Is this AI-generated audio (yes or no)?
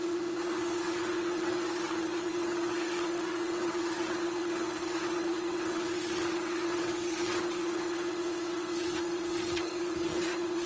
yes